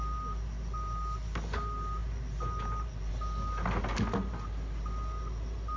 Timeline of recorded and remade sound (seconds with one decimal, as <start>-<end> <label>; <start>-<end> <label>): 0.0-5.8 recorded